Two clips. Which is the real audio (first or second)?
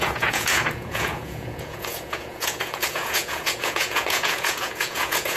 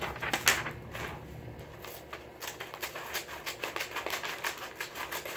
second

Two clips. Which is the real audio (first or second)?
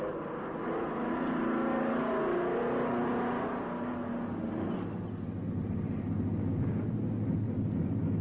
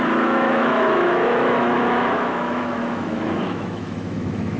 first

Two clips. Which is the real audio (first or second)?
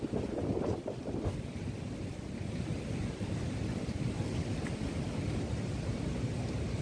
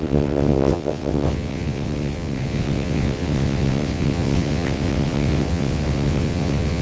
first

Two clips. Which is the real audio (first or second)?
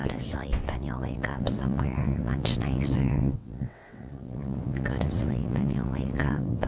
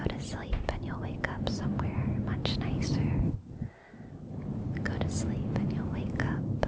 second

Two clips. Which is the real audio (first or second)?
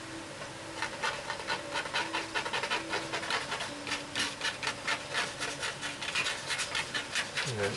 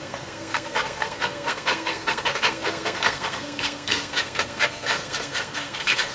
first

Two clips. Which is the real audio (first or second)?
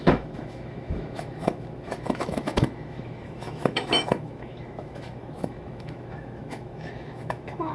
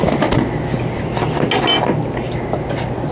second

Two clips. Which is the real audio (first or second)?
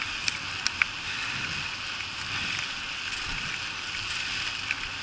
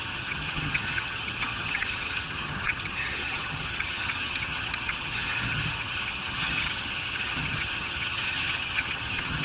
first